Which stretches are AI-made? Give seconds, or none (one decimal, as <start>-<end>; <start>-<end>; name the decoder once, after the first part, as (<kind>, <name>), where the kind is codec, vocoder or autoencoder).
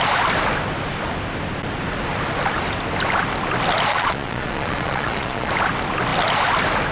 3.9-5.5 (vocoder, Vocos)